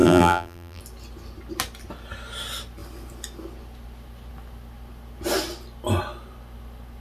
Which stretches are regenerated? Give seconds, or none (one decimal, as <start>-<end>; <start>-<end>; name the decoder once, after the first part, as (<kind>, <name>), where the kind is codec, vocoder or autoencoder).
0.0-0.8 (vocoder, BigVGAN v2)